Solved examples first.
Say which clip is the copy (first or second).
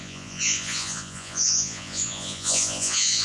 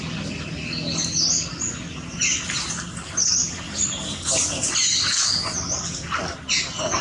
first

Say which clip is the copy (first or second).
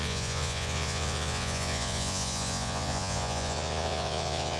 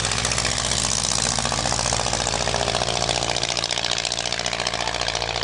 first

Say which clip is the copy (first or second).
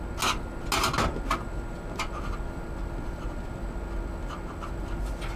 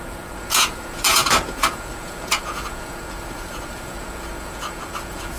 second